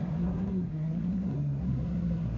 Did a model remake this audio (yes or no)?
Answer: yes